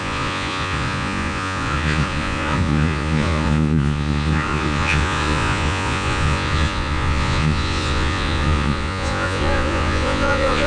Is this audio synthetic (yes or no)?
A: yes